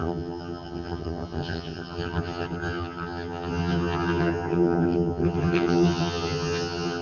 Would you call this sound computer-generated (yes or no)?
yes